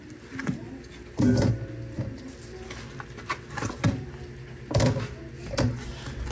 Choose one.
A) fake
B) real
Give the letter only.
B